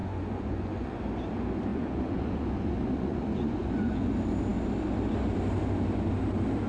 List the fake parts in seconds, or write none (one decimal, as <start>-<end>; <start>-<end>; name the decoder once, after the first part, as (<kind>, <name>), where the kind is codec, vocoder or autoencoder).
0.0-1.0 (vocoder, Vocos); 1.7-4.1

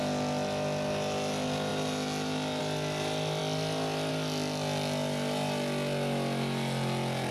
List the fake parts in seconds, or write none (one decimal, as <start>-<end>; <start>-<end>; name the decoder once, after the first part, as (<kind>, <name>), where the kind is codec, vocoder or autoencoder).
none

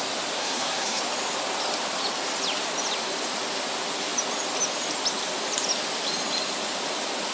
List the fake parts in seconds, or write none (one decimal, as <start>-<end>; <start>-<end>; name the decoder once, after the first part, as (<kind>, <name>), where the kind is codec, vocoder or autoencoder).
0.4-1.0 (codec, SNAC)

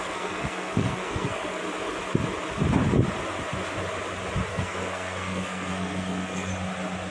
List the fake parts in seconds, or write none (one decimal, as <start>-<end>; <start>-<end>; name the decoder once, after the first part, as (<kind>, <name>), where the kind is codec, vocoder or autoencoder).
0.0-1.6 (codec, SNAC); 4.5-6.5

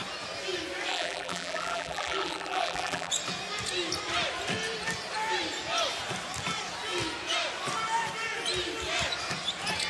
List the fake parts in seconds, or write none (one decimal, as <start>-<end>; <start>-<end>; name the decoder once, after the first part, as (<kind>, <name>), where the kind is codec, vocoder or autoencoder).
0.9-3.1 (vocoder, BigVGAN v2)